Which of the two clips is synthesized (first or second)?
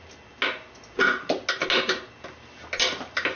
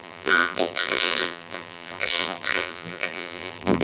second